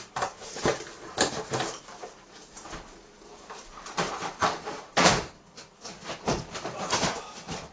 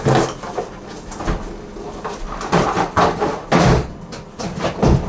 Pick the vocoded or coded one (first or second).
first